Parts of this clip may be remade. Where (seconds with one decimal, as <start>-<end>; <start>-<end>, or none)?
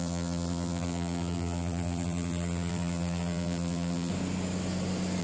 0.0-4.1